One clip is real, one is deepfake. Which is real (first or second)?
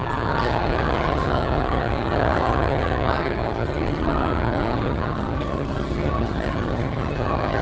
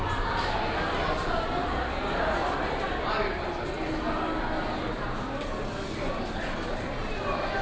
second